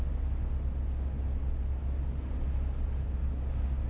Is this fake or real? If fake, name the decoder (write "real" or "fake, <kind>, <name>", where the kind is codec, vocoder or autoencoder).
real